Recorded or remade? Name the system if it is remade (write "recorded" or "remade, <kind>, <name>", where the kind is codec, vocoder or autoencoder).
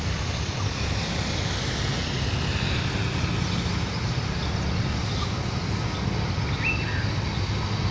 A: recorded